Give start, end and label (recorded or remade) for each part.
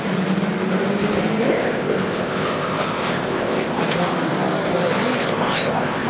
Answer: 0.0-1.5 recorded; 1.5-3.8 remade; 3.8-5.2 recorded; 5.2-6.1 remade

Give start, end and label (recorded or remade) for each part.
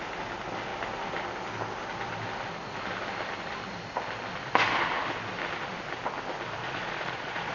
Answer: 0.0-6.6 recorded; 6.6-7.5 remade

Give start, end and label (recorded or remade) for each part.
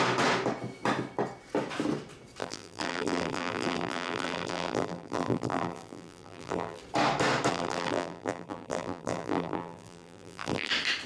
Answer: 0.0-2.4 recorded; 2.4-6.8 remade; 6.8-7.5 recorded; 7.5-10.7 remade; 10.7-11.1 recorded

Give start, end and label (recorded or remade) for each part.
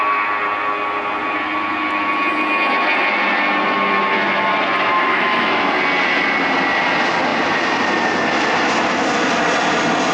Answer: 0.0-4.9 recorded; 4.9-5.7 remade; 5.7-10.1 recorded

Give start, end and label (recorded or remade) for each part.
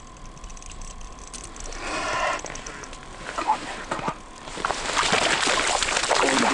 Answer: 0.0-6.5 recorded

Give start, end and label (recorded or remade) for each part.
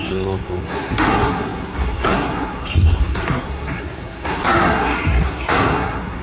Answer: 0.0-6.2 remade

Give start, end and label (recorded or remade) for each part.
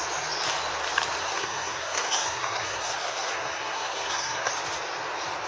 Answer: 0.0-1.2 recorded; 1.2-4.5 remade; 4.5-5.5 recorded